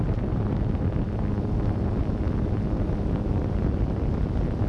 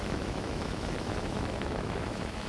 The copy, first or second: second